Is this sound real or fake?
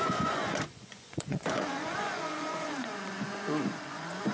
fake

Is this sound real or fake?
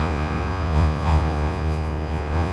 fake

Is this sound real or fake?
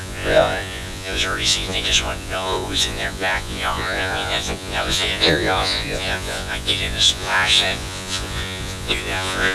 fake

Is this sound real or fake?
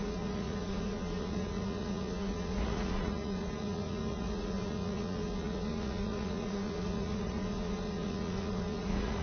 fake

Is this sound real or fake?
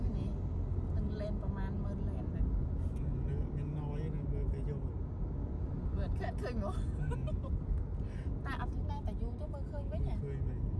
real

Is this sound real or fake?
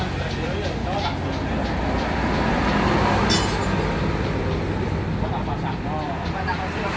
real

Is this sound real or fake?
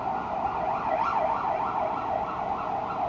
real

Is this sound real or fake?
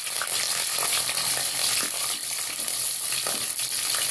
real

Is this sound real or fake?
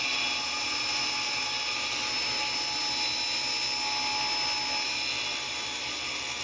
real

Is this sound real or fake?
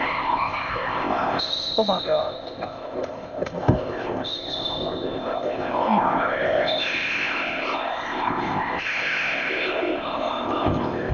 fake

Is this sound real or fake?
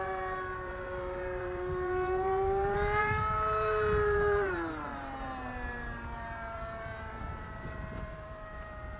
fake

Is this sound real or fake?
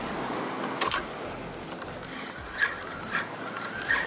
real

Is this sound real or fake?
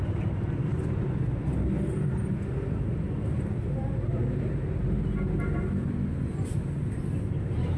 real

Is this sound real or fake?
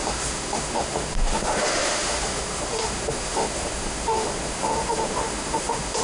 fake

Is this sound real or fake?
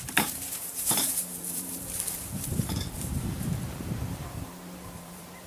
fake